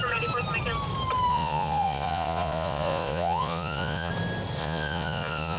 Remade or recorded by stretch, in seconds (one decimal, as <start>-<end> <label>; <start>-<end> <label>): 0.0-1.3 recorded; 1.3-4.1 remade; 4.1-4.6 recorded; 4.6-5.6 remade